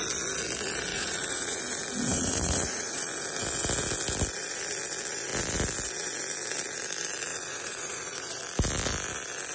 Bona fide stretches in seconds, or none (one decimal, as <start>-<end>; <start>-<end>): 0.0-0.9; 1.6-2.1; 3.1-7.3; 8.4-9.5